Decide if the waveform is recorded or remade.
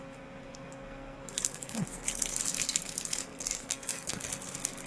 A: remade